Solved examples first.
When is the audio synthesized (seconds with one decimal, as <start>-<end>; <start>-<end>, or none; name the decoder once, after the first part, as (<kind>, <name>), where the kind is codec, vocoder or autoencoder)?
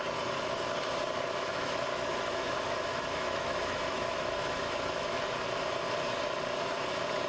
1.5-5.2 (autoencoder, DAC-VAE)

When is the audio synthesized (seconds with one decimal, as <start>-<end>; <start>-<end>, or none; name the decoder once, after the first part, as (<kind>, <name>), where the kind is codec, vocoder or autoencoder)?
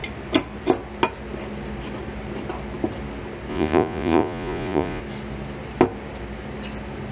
3.5-5.0 (vocoder, Vocos)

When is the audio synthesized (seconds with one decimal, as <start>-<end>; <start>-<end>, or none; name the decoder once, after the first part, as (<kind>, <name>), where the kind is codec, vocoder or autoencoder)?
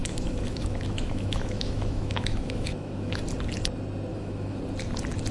0.0-3.2 (autoencoder, DAC-VAE); 4.1-4.6